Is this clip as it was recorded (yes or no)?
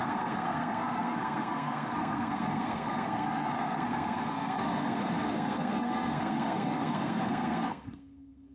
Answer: no